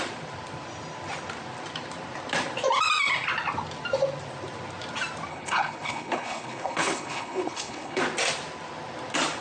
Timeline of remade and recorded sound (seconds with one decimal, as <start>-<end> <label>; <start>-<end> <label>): 0.0-5.3 recorded; 5.3-8.0 remade; 8.0-9.4 recorded